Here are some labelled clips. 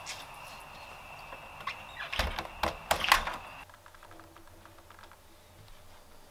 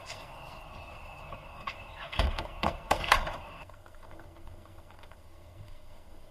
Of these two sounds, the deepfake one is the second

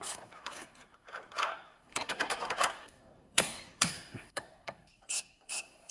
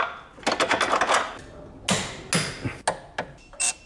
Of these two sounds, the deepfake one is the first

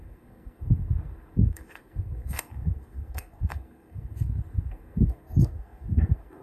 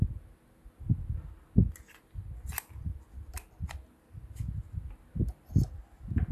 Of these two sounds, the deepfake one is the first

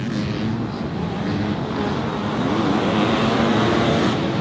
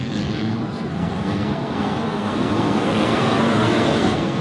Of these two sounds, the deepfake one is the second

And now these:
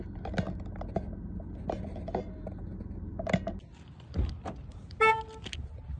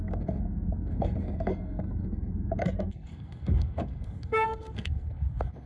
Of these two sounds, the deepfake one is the second